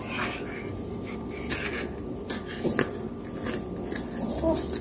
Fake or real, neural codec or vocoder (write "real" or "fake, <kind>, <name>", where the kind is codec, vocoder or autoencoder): real